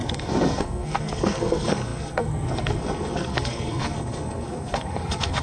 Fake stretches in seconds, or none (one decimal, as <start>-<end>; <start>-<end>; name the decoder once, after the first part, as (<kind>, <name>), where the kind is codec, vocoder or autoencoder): 0.0-5.4 (codec, SNAC)

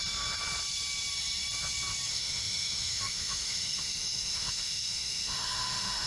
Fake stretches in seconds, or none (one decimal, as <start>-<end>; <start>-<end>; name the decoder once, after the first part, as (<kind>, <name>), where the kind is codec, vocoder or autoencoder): 2.1-6.1 (autoencoder, DAC-VAE)

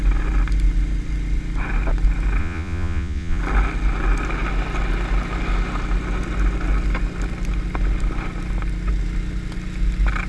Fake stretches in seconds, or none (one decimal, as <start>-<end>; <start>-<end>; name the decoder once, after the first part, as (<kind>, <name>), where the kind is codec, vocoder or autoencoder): 2.4-3.4 (vocoder, Vocos)